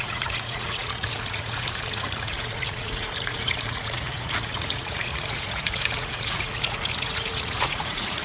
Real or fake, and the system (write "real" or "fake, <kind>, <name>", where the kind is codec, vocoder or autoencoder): fake, vocoder, Vocos